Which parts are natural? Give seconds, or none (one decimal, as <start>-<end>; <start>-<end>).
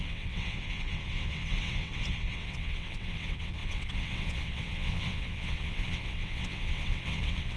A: none